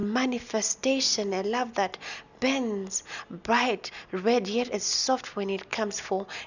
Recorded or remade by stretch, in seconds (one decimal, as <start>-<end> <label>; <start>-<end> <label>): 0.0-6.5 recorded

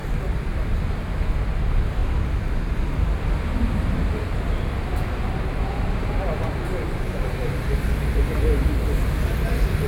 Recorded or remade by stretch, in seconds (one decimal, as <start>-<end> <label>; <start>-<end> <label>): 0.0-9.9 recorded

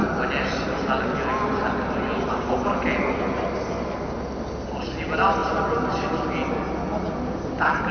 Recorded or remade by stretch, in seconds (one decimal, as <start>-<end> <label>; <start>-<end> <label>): 0.0-7.9 recorded

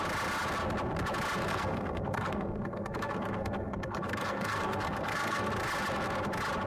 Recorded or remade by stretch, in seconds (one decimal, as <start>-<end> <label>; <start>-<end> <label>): 0.0-1.5 recorded; 1.5-5.5 remade; 5.5-6.7 recorded

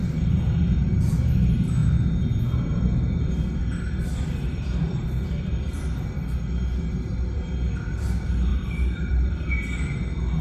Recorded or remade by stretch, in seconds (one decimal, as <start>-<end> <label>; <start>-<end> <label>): 0.0-3.6 recorded; 3.6-5.8 remade; 5.8-8.5 recorded; 8.5-9.5 remade; 9.5-10.4 recorded

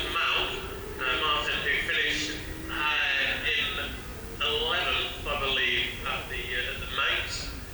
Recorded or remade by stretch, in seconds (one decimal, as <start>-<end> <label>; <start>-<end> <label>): 0.0-7.7 recorded